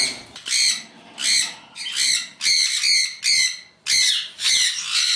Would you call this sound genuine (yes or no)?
yes